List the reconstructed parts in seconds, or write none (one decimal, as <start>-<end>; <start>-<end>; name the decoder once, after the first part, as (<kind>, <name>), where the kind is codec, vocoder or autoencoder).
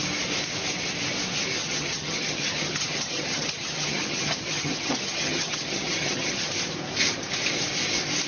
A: 1.6-6.5 (vocoder, HiFi-GAN)